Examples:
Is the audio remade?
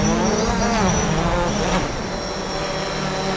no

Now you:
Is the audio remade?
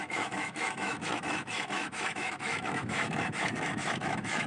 yes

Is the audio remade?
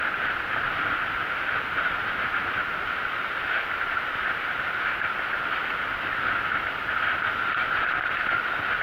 no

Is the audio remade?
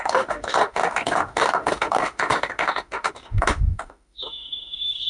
yes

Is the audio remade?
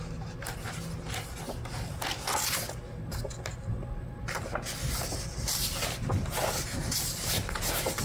no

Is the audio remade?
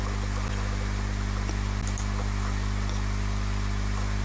no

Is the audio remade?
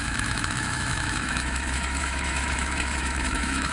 yes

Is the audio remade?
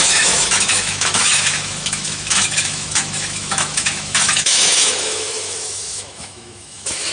yes